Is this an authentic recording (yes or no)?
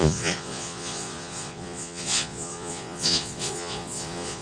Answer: no